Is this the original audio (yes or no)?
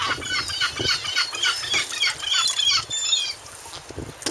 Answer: yes